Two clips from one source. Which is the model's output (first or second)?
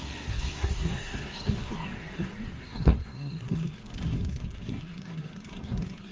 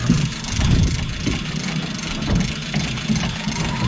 first